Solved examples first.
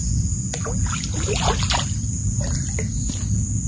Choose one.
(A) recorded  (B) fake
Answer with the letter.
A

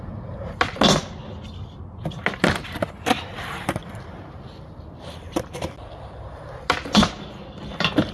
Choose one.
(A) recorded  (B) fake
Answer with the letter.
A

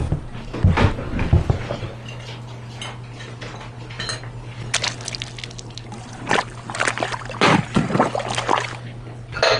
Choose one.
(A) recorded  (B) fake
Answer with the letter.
A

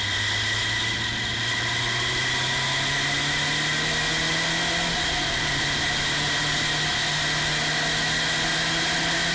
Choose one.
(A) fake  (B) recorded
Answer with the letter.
B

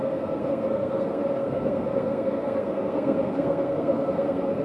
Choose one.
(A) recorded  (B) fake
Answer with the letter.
B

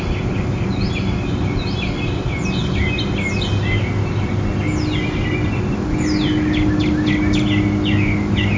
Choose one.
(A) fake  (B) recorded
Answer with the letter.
B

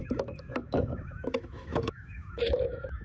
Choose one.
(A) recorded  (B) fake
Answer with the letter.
B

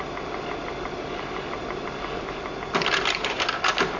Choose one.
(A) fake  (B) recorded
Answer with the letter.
B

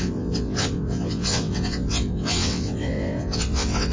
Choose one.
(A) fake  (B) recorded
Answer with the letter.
A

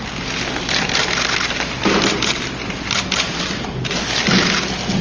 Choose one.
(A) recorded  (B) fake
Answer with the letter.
A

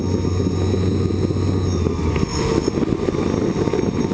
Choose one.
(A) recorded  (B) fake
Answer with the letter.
A